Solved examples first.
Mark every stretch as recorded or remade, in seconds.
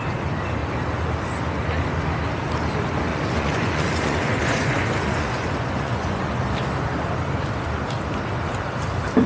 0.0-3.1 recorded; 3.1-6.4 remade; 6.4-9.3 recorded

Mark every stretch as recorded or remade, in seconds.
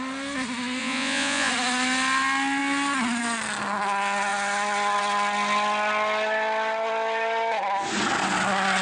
0.0-0.8 recorded; 0.8-1.5 remade; 1.5-8.8 recorded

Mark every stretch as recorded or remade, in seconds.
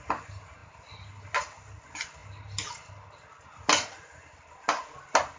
0.0-5.4 recorded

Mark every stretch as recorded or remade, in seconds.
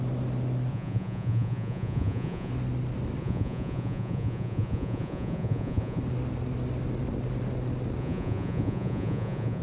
0.0-0.7 recorded; 0.7-2.5 remade; 2.5-3.2 recorded; 3.2-6.0 remade; 6.0-8.0 recorded; 8.0-9.6 remade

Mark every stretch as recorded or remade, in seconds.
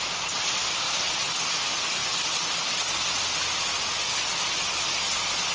0.0-5.5 recorded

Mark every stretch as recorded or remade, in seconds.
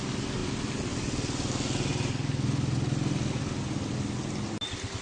0.0-5.0 recorded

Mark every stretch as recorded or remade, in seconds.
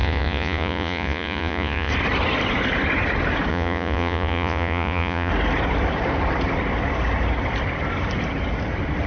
0.0-1.9 remade; 1.9-3.5 recorded; 3.5-5.3 remade; 5.3-9.1 recorded